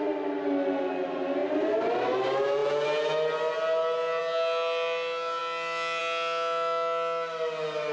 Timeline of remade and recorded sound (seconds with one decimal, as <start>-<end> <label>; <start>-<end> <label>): 0.0-7.9 recorded